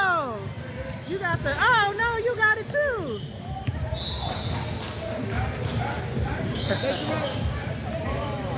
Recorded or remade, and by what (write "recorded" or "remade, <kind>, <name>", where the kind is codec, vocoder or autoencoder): recorded